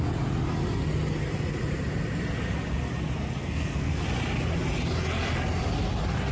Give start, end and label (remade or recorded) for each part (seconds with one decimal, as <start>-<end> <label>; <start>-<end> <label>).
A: 0.0-3.4 recorded; 3.4-4.0 remade; 4.0-6.3 recorded